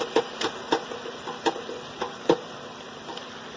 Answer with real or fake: real